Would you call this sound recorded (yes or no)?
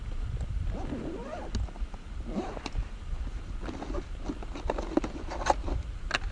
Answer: yes